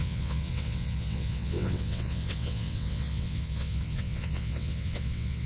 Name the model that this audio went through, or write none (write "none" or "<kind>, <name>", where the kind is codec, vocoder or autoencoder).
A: vocoder, WaveNeXt